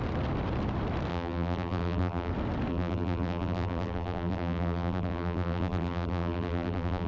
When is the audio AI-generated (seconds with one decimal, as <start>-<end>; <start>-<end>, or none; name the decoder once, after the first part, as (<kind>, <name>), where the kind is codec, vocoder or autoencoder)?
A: 1.1-2.3 (vocoder, BigVGAN v2); 2.7-7.1